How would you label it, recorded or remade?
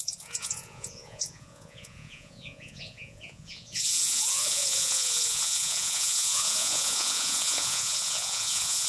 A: remade